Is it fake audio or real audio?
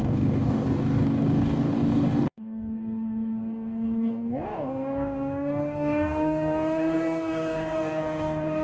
fake